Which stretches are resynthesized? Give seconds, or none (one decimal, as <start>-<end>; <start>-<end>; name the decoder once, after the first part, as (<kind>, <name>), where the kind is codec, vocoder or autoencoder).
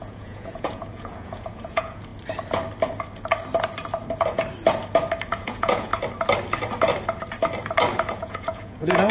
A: 0.0-2.1 (vocoder, Vocos); 5.3-5.9; 8.1-9.1